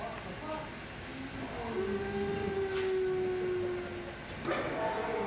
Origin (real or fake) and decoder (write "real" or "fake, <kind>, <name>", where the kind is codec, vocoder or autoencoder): real